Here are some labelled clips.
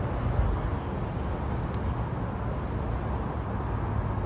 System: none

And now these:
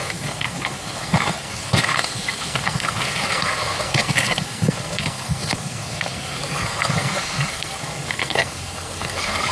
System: codec, SNAC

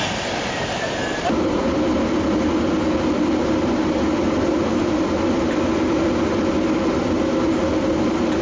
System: none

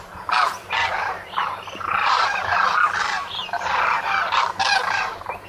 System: vocoder, BigVGAN v2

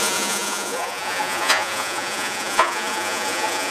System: vocoder, Vocos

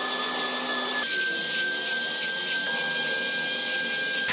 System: none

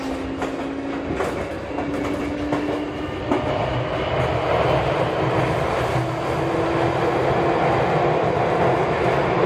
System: none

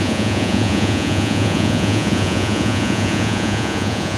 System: vocoder, Vocos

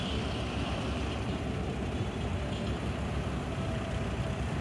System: vocoder, BigVGAN v2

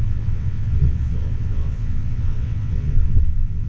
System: vocoder, WaveNeXt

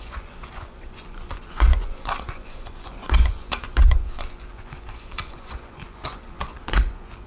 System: vocoder, Vocos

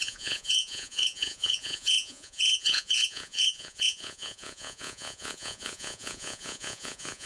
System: vocoder, Vocos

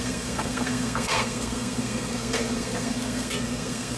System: codec, SNAC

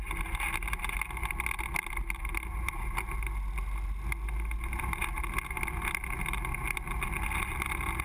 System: none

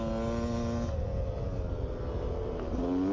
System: none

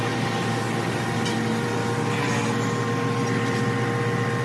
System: none